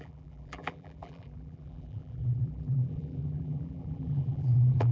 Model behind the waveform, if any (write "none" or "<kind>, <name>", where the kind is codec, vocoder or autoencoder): vocoder, BigVGAN v2